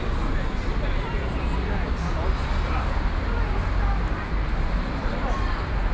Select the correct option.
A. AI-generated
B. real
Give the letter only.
B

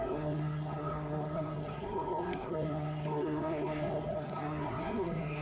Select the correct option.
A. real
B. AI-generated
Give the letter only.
B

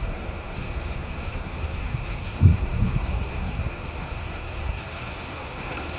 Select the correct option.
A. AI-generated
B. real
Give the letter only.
A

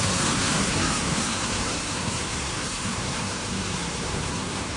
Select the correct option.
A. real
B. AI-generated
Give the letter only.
B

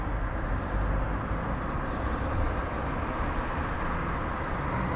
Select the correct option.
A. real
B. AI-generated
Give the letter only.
A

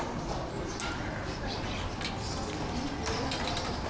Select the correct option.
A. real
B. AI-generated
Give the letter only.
A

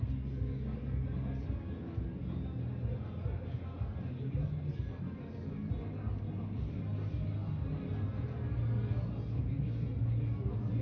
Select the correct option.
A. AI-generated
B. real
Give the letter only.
B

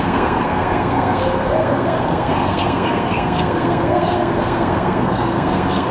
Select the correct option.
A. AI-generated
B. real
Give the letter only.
A